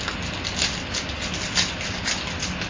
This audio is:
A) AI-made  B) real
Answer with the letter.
B